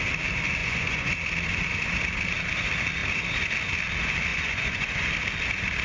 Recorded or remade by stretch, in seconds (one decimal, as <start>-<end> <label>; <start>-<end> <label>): 0.0-0.6 recorded; 0.6-1.1 remade; 1.1-4.3 recorded; 4.3-5.1 remade; 5.1-5.8 recorded